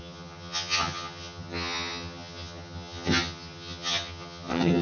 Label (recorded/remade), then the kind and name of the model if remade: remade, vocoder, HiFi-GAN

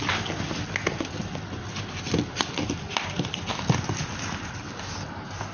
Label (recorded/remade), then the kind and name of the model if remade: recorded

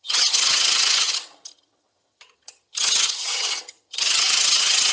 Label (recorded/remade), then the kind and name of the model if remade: remade, vocoder, HiFi-GAN